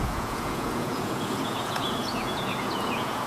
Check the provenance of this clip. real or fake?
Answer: fake